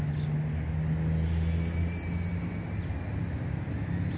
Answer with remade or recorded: recorded